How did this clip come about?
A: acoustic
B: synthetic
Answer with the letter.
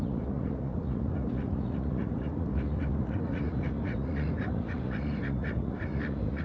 B